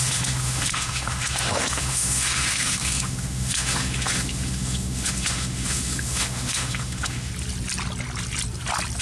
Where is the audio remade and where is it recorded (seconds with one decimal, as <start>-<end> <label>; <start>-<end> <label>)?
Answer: 0.0-7.3 remade; 7.3-9.0 recorded